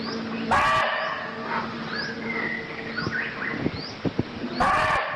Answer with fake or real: real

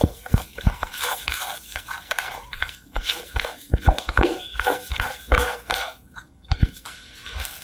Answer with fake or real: fake